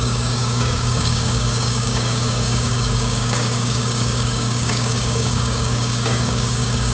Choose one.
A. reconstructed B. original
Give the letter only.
A